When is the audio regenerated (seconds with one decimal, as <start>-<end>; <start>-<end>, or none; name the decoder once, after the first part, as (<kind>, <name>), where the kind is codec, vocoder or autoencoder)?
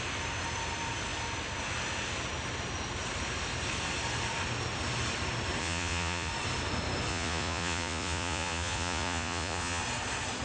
5.6-6.3 (vocoder, Vocos); 7.1-9.8